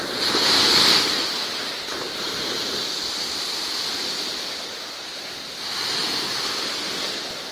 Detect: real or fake real